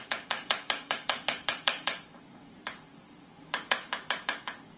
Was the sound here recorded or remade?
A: remade